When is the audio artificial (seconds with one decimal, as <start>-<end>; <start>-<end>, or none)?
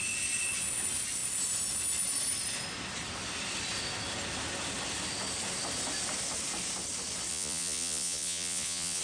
7.3-9.0